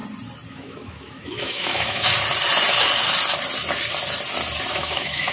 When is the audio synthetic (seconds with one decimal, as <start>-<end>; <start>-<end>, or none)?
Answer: 0.5-2.1; 4.7-5.3